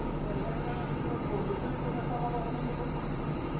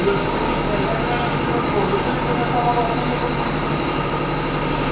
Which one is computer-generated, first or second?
first